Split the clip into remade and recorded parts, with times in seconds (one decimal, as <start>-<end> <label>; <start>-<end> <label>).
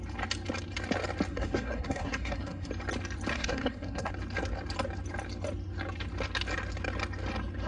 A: 0.0-1.3 recorded; 1.3-2.7 remade; 2.7-3.3 recorded; 3.3-4.1 remade; 4.1-7.7 recorded